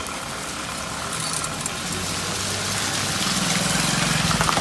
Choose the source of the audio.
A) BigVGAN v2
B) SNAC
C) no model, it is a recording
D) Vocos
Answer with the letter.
C